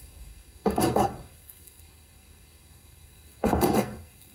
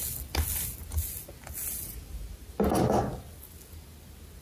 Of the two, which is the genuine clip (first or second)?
second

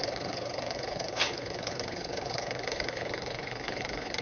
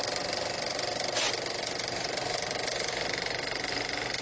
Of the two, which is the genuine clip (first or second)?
second